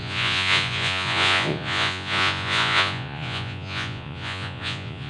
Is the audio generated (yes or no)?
yes